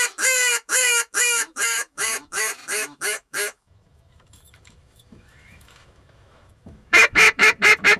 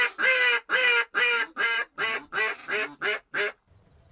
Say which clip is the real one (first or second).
second